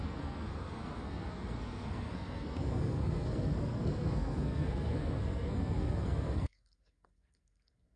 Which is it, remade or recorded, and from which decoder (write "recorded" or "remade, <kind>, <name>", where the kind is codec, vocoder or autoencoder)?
remade, codec, SNAC